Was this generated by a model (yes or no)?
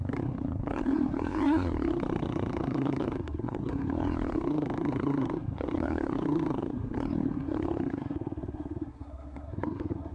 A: yes